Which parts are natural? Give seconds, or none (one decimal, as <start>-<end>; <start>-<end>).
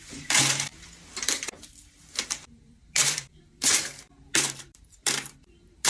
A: none